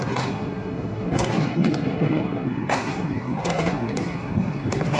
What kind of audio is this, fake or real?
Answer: fake